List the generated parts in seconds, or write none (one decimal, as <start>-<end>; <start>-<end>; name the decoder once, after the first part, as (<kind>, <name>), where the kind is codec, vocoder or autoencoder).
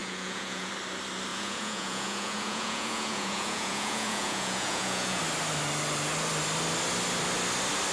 0.0-0.7 (vocoder, Vocos); 1.3-5.2